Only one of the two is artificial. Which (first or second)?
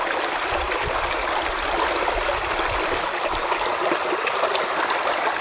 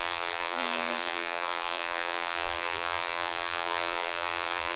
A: second